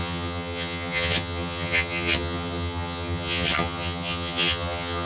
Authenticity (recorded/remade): remade